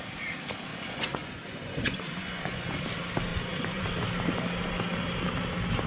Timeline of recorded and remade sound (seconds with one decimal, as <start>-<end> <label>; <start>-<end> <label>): 0.0-0.7 recorded; 0.7-2.8 remade; 2.8-3.3 recorded; 3.3-3.8 remade; 3.8-5.9 recorded

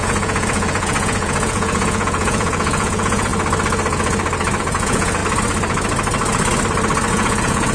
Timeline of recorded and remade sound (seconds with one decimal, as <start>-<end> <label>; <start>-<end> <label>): 0.0-3.3 remade; 3.3-4.6 recorded; 4.6-5.2 remade; 5.2-7.1 recorded; 7.1-7.7 remade

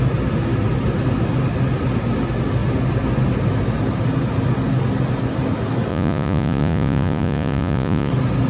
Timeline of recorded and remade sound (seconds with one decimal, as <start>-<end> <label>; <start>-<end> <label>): 0.0-5.9 recorded; 5.9-8.1 remade; 8.1-8.5 recorded

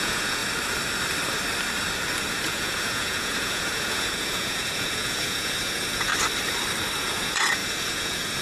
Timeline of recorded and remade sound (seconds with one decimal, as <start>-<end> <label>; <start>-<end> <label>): 0.0-0.4 remade; 0.4-2.3 recorded; 2.3-6.1 remade; 6.1-7.0 recorded; 7.0-8.4 remade

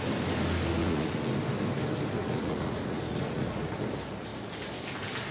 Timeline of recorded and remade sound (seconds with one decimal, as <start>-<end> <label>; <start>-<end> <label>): 0.0-0.8 recorded; 0.8-1.3 remade; 1.3-2.2 recorded; 2.2-3.8 remade; 3.8-5.3 recorded

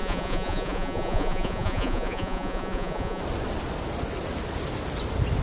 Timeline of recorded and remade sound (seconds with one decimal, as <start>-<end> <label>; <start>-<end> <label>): 0.0-3.2 remade; 3.2-5.4 recorded

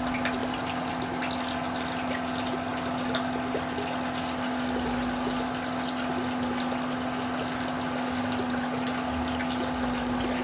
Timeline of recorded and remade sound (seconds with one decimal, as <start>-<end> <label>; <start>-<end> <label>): 0.0-10.4 recorded

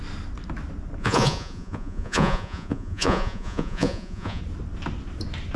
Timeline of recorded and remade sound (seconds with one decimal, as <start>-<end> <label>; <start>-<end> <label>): 0.0-1.0 recorded; 1.0-4.4 remade; 4.4-5.6 recorded